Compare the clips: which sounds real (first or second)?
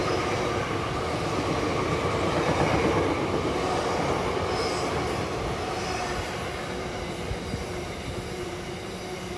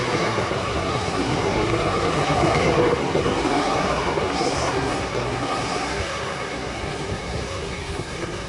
first